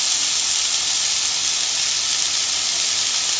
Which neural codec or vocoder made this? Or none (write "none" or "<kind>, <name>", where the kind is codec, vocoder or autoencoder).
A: none